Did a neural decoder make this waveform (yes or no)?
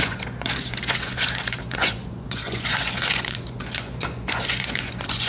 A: yes